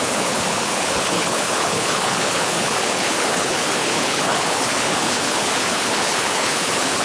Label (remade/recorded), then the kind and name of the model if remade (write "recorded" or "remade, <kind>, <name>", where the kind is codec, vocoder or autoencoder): remade, codec, HILCodec